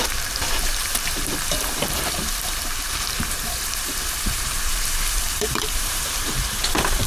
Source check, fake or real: fake